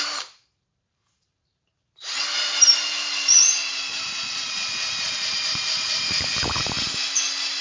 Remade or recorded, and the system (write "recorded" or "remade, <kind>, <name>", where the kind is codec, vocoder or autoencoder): remade, vocoder, BigVGAN v2